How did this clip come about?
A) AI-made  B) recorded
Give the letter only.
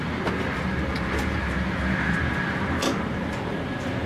B